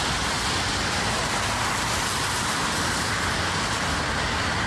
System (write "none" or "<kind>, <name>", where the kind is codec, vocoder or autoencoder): vocoder, BigVGAN v2